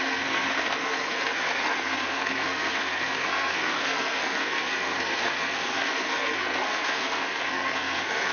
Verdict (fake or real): fake